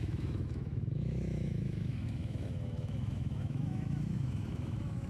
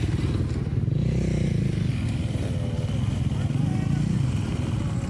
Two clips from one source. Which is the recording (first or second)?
second